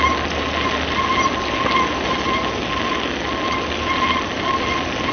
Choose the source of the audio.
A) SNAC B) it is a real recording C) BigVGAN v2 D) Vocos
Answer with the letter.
B